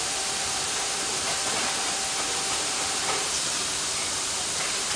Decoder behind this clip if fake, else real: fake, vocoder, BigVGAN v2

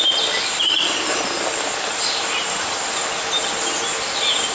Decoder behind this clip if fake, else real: real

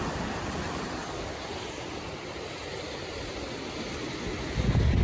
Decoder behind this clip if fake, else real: real